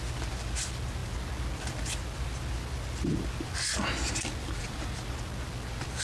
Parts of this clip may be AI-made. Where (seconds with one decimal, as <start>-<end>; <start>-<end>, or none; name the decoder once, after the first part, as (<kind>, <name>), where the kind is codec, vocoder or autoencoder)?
none